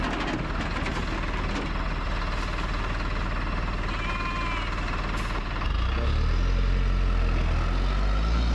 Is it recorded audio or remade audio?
recorded